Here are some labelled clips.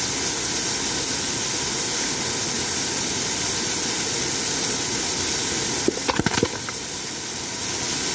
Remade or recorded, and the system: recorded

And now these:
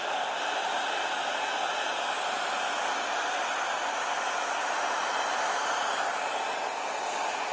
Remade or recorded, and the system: recorded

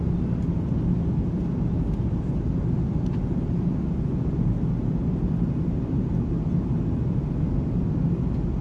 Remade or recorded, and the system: recorded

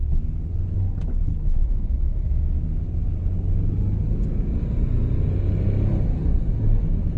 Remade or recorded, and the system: recorded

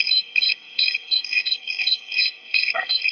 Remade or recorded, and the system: remade, codec, SNAC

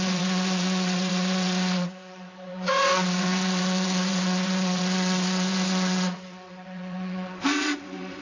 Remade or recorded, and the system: remade, vocoder, WaveNeXt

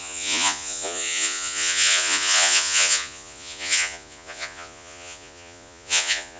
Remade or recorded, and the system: remade, vocoder, Vocos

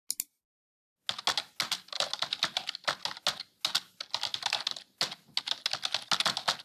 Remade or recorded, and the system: recorded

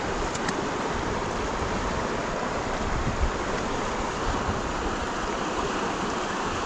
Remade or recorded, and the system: remade, vocoder, BigVGAN v2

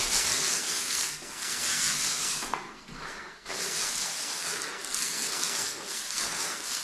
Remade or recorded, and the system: remade, codec, SNAC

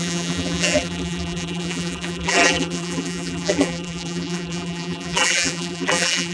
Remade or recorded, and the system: remade, vocoder, BigVGAN v2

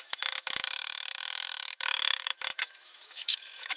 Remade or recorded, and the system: remade, autoencoder, DAC-VAE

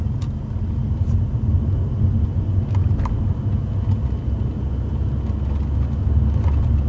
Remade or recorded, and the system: recorded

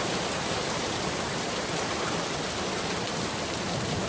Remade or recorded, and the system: remade, vocoder, BigVGAN v2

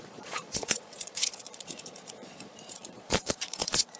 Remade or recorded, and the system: remade, vocoder, Vocos